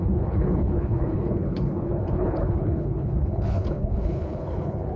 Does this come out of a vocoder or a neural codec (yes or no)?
yes